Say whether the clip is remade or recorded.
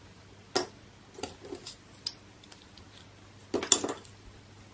recorded